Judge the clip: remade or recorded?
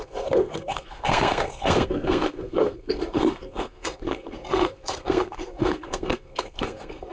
remade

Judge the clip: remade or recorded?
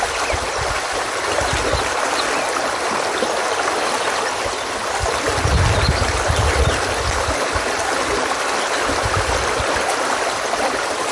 recorded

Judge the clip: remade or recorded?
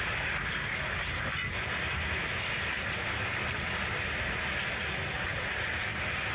recorded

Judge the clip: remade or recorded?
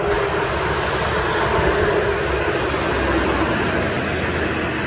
recorded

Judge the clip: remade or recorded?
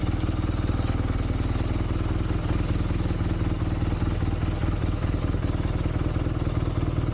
recorded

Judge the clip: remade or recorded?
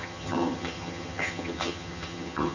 remade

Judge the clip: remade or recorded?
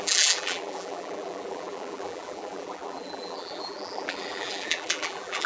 remade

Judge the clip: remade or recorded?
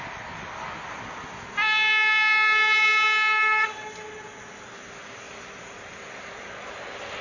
recorded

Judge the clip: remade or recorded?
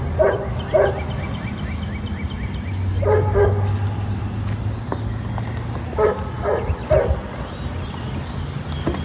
recorded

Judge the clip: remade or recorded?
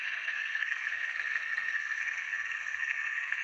remade